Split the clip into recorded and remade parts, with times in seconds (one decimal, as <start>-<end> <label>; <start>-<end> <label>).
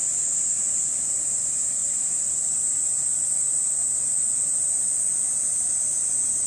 0.0-6.5 recorded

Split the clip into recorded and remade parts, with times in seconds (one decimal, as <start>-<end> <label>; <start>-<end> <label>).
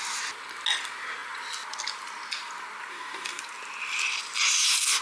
0.0-2.9 recorded; 2.9-3.4 remade; 3.4-5.0 recorded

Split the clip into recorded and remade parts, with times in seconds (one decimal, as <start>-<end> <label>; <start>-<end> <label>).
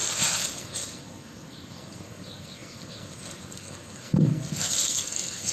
0.0-5.5 remade